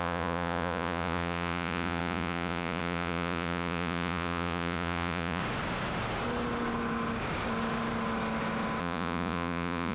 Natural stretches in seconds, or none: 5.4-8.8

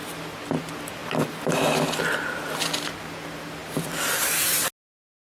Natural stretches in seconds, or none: 0.0-5.2

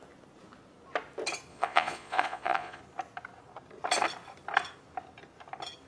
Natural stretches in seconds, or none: 0.0-1.5; 2.8-5.9

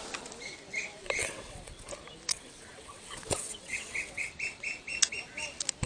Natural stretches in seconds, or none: 0.0-1.2; 1.9-2.3; 4.3-5.9

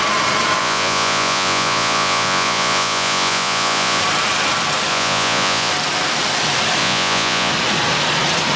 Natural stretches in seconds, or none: 0.0-0.6; 4.0-4.9; 5.7-6.8; 7.5-8.6

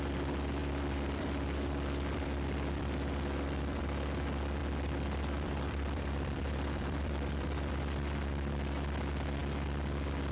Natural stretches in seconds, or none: 0.0-0.6; 3.8-4.6; 7.8-10.3